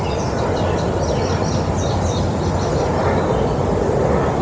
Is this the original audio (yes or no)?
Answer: yes